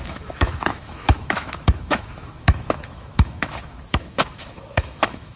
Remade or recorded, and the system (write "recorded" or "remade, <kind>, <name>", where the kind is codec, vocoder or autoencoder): remade, autoencoder, DAC-VAE